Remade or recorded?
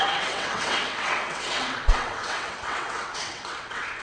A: remade